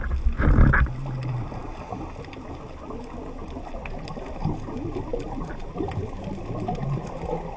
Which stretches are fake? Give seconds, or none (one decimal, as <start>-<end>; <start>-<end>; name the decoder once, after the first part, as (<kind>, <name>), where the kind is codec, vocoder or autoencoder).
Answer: none